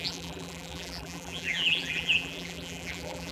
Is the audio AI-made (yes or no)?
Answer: yes